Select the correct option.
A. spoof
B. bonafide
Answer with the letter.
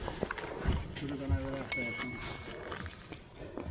B